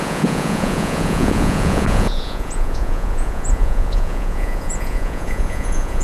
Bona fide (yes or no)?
no